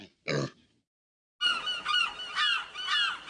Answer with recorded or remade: recorded